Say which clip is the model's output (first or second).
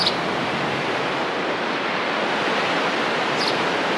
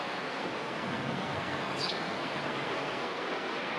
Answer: second